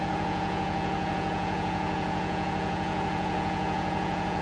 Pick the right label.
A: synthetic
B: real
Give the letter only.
A